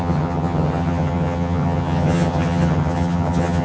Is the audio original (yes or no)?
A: no